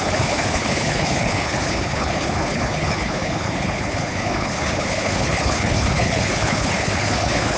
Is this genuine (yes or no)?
no